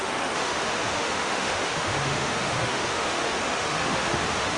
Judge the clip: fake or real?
fake